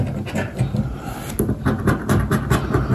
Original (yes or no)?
yes